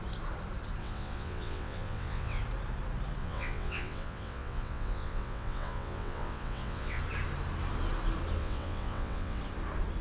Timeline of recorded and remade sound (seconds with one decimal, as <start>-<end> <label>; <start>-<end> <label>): 0.0-0.8 recorded; 0.8-2.4 remade; 2.4-3.2 recorded; 3.2-7.0 remade; 7.0-8.4 recorded; 8.4-9.4 remade; 9.4-10.0 recorded